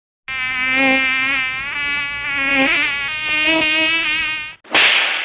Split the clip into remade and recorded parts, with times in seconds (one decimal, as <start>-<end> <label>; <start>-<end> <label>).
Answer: 0.0-2.5 recorded; 2.5-4.2 remade; 4.2-5.2 recorded